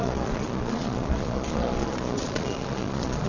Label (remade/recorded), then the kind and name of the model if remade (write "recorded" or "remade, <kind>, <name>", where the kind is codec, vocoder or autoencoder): remade, vocoder, Vocos